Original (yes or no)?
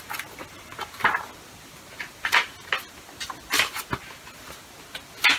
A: yes